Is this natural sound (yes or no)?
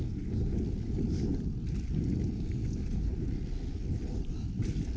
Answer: yes